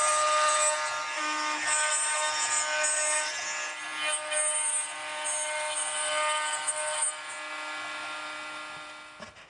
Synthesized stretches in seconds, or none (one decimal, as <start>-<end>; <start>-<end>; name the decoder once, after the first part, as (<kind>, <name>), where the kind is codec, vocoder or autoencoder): none